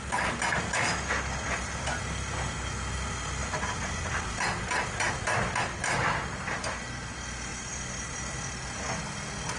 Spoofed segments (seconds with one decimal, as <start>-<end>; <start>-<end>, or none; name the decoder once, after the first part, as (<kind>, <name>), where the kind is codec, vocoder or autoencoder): none